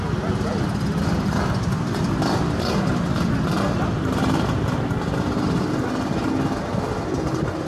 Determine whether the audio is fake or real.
real